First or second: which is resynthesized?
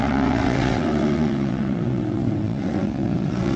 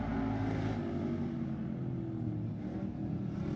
first